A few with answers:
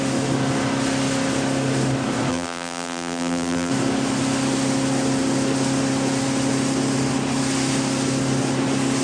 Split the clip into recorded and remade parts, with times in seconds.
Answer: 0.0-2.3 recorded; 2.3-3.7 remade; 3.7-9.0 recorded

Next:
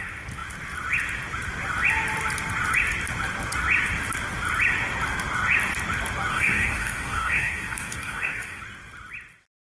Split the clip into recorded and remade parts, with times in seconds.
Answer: 0.0-6.3 recorded; 6.3-8.6 remade; 8.6-9.6 recorded

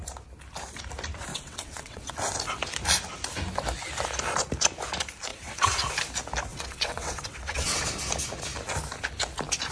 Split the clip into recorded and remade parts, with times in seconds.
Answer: 0.0-1.3 recorded; 1.3-2.1 remade; 2.1-5.3 recorded; 5.3-5.9 remade; 5.9-6.5 recorded; 6.5-7.8 remade; 7.8-9.7 recorded